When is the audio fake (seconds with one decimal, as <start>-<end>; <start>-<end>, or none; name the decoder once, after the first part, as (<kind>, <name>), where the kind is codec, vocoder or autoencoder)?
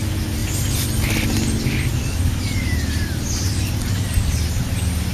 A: none